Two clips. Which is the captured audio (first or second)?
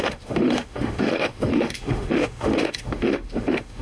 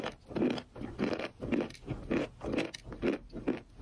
second